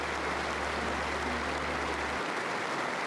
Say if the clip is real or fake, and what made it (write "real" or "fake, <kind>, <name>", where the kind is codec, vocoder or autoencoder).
real